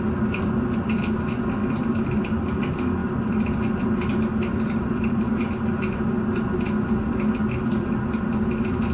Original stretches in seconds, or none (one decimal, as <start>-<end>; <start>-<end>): 0.0-1.6; 2.2-3.0; 5.4-8.9